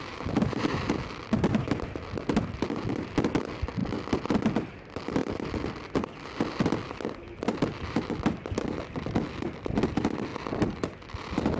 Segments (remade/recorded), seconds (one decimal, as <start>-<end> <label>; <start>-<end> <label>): 0.0-11.6 recorded

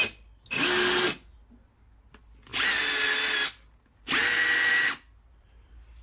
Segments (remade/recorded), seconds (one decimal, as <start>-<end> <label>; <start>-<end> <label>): 0.0-6.0 recorded

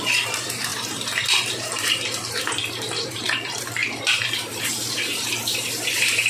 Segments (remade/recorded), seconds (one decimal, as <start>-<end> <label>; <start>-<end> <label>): 0.0-6.3 remade

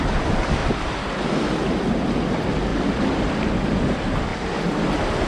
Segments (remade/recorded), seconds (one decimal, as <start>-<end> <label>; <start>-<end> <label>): 0.0-0.6 recorded; 0.6-1.9 remade; 1.9-2.7 recorded; 2.7-3.4 remade; 3.4-5.3 recorded

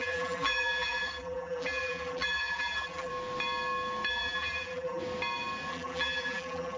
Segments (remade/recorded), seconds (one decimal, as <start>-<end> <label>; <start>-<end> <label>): 0.0-3.1 remade; 3.1-4.1 recorded; 4.1-5.0 remade; 5.0-5.7 recorded; 5.7-6.8 remade

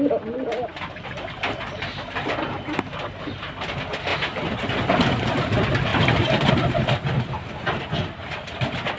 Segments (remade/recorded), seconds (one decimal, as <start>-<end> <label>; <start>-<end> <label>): 0.0-5.9 recorded; 5.9-6.5 remade; 6.5-8.2 recorded; 8.2-9.0 remade

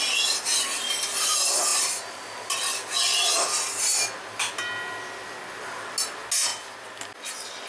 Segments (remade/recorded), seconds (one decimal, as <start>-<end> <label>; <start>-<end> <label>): 0.0-7.7 recorded